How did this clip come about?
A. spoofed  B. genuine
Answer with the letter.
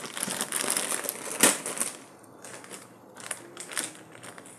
B